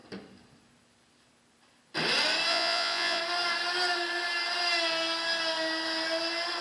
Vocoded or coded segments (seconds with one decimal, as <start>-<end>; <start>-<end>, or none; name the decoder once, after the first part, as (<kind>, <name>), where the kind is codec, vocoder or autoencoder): 2.5-3.2 (vocoder, Vocos)